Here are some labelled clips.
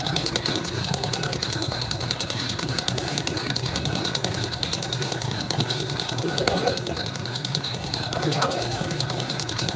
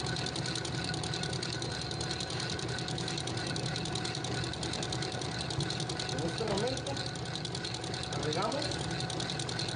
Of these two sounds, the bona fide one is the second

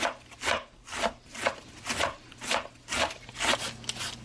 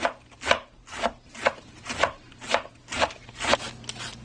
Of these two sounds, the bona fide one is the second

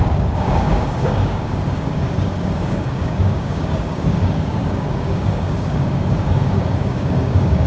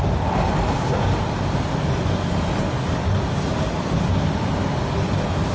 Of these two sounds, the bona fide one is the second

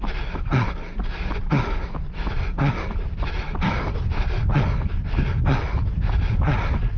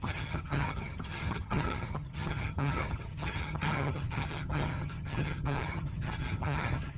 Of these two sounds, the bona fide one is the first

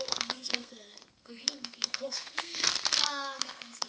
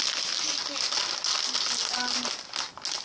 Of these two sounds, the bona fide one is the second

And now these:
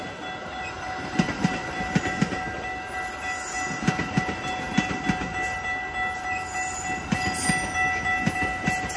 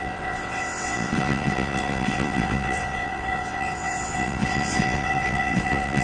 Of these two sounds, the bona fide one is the first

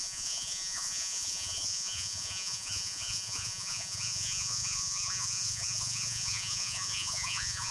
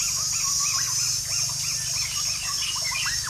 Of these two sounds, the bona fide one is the second